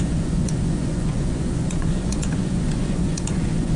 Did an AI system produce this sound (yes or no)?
yes